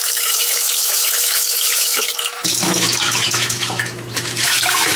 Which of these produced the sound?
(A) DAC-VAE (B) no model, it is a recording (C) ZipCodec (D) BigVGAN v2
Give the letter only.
A